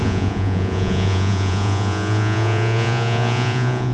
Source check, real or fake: fake